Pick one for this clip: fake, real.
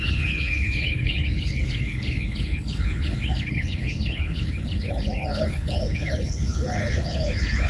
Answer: fake